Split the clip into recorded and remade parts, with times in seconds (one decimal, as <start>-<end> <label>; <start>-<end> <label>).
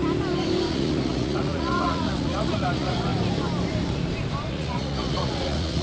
0.0-0.7 recorded; 0.7-3.1 remade; 3.1-4.5 recorded; 4.5-5.8 remade